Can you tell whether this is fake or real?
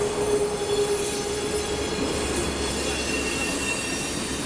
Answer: real